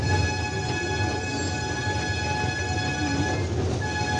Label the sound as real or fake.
real